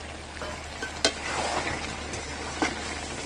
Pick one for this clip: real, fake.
real